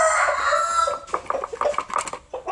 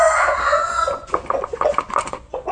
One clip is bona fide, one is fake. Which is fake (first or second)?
second